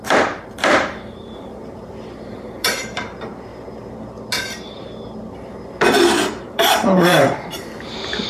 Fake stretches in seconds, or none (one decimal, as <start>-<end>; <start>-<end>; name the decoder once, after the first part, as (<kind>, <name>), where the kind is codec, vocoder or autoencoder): 0.0-3.5 (vocoder, BigVGAN v2); 6.4-8.3